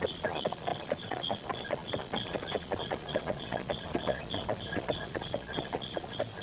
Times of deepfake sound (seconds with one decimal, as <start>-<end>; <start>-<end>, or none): 0.0-6.4